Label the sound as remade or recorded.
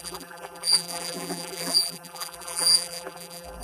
remade